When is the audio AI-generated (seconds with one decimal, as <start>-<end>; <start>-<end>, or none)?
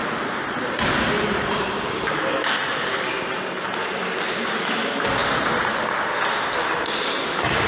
0.0-4.6